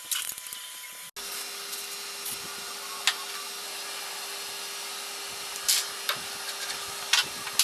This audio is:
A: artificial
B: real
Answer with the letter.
B